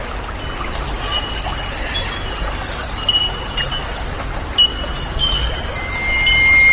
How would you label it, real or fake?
real